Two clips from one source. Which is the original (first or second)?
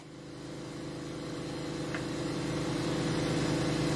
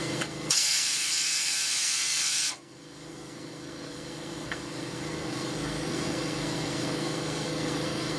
first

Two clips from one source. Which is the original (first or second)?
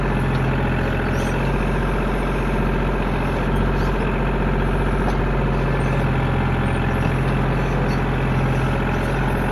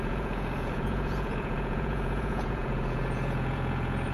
first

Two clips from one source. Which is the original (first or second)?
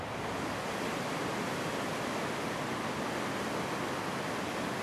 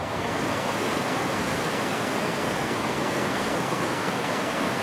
first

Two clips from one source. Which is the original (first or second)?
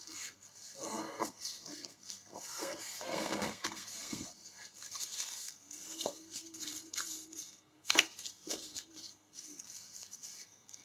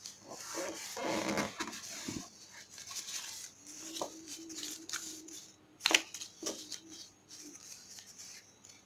second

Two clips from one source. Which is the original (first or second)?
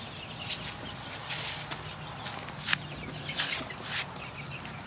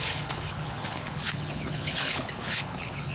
first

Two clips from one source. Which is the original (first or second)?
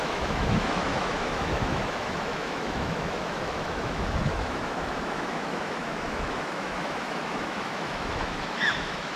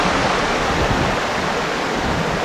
second